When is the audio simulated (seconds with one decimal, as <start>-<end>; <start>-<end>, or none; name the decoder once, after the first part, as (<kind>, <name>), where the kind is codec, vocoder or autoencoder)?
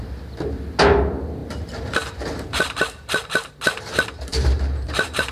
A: 1.4-3.5 (vocoder, BigVGAN v2); 4.3-5.3